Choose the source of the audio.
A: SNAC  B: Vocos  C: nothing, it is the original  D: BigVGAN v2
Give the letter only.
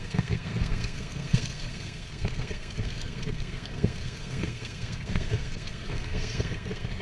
A